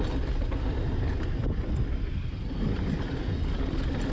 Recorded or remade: recorded